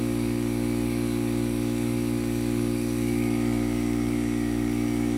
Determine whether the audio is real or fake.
fake